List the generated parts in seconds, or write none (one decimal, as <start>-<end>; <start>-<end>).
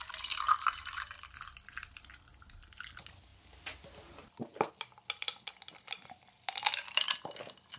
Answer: none